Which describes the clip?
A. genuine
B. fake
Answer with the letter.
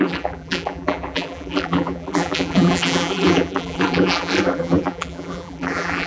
B